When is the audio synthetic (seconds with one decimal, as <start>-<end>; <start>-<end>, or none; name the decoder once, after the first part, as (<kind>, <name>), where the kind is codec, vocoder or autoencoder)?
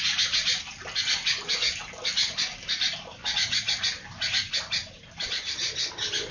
3.2-3.8 (vocoder, Vocos)